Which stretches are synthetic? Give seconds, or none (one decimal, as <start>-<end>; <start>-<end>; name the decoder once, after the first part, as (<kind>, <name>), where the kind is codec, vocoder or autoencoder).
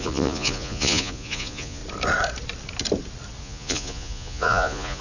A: 0.0-1.8 (vocoder, Vocos); 3.4-5.0